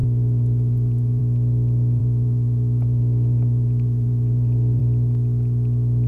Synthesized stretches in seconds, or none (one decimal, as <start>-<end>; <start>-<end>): 0.0-1.2; 2.0-4.8